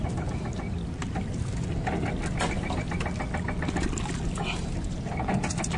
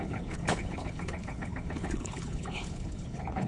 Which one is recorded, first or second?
first